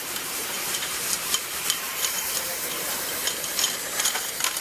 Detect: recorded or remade remade